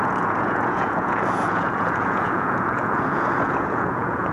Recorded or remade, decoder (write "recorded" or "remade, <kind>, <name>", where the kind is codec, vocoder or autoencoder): remade, vocoder, Vocos